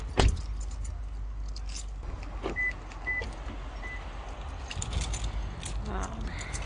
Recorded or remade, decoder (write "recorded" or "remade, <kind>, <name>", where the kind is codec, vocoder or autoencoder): recorded